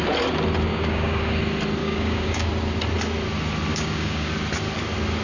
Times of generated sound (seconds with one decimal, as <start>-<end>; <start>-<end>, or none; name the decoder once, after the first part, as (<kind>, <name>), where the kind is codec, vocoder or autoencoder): 0.7-1.4 (codec, DAC); 1.8-2.5; 3.7-4.3